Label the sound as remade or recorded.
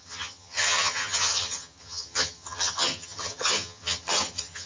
remade